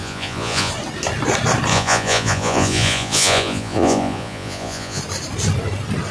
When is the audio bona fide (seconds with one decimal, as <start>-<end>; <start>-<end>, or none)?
0.7-1.7; 5.0-6.1